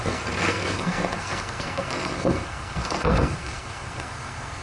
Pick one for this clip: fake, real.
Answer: fake